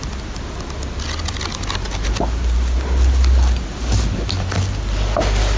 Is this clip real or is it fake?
real